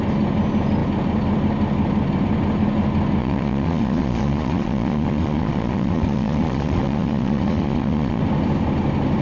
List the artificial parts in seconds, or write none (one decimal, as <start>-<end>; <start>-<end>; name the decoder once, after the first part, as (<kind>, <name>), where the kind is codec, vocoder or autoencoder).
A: 3.2-8.2 (vocoder, Vocos)